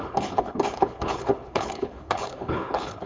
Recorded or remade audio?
remade